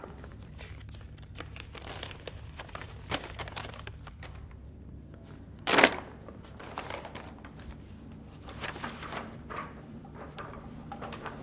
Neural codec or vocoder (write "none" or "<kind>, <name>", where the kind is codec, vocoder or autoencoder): vocoder, BigVGAN v2